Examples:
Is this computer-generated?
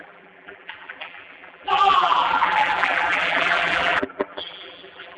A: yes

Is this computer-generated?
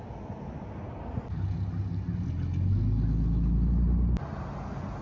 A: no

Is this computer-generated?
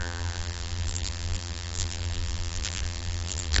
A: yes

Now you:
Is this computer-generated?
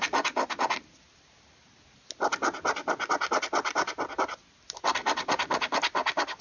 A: no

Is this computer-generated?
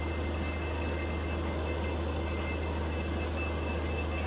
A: no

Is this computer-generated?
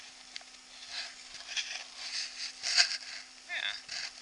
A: no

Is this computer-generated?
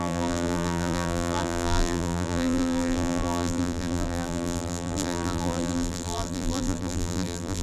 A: yes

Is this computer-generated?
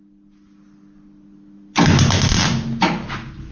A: no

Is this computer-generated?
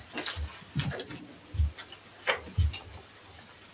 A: no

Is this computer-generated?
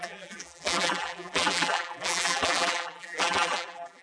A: yes